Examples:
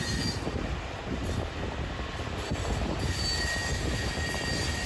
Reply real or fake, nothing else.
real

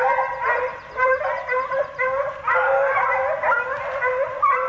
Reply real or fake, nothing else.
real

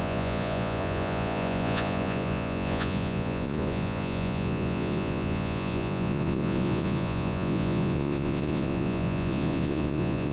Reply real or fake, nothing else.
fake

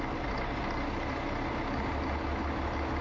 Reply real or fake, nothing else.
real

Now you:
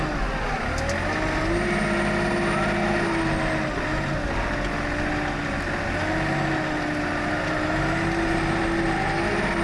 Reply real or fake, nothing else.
real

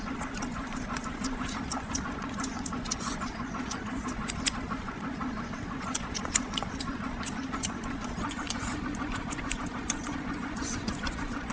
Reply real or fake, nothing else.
fake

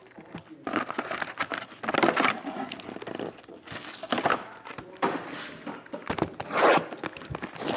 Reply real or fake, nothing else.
real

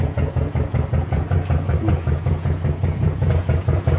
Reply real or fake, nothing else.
fake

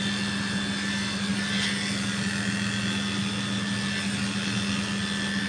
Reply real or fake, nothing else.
real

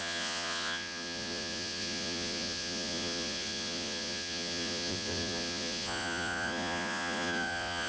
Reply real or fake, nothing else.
fake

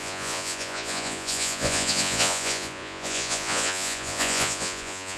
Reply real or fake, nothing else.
fake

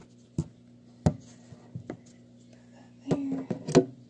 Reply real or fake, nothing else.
real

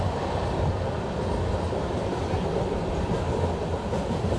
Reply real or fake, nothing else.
real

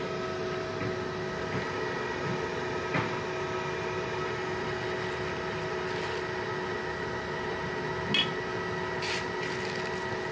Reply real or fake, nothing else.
real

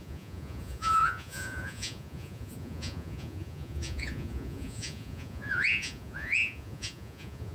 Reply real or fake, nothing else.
fake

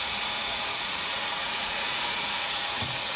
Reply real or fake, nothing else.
fake